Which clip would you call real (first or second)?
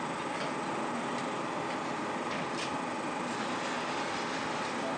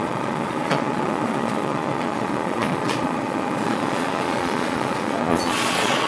first